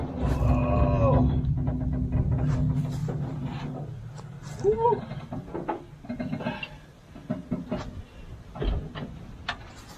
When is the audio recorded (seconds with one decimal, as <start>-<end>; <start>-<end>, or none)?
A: 0.0-3.0; 3.6-10.0